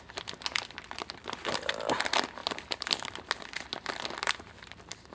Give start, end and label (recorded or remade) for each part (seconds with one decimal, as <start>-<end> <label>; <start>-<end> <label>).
0.0-5.1 recorded